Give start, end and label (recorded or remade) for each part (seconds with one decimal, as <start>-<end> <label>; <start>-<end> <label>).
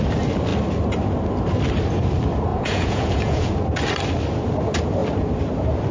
0.0-2.5 recorded; 2.5-3.5 remade; 3.5-5.9 recorded